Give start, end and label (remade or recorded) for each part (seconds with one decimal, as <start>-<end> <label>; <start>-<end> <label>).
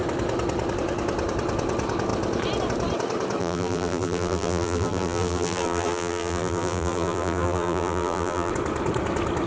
0.0-3.4 recorded; 3.4-8.5 remade; 8.5-9.5 recorded